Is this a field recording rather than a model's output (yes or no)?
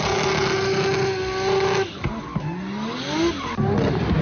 yes